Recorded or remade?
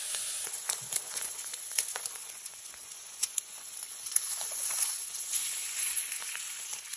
remade